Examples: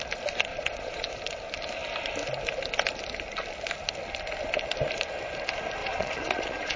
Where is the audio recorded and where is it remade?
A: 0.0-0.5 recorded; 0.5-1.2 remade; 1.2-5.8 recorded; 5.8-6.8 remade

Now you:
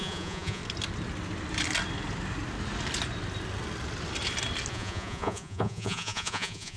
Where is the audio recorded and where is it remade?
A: 0.0-0.6 remade; 0.6-4.7 recorded; 4.7-6.8 remade

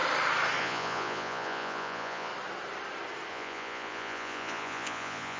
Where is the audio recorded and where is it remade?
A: 0.0-0.6 recorded; 0.6-2.3 remade; 2.3-3.3 recorded; 3.3-5.4 remade

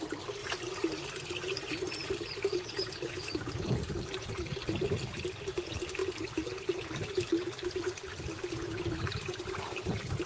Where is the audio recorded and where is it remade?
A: 0.0-10.3 recorded

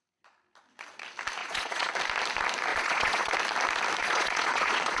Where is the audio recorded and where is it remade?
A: 0.0-1.4 recorded; 1.4-1.9 remade; 1.9-2.7 recorded; 2.7-3.3 remade; 3.3-4.0 recorded; 4.0-5.0 remade